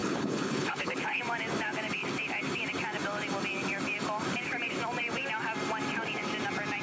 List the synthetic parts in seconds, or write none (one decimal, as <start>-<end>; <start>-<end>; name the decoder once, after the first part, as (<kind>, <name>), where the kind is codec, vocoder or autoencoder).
0.0-1.2 (codec, HILCodec)

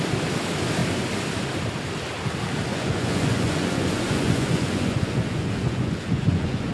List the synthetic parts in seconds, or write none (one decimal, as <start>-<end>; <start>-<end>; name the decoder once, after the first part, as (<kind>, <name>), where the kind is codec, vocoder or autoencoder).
2.7-6.7 (vocoder, Vocos)

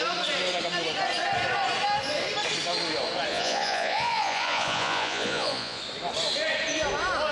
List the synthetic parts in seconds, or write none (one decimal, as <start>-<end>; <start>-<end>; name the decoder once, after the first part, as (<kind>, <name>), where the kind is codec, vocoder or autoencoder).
3.3-5.8 (vocoder, Vocos)

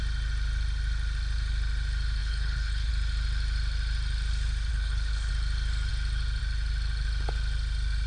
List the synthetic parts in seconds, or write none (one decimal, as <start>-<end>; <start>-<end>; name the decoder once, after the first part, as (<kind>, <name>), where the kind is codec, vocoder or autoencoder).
2.2-2.9 (codec, HILCodec); 4.7-5.3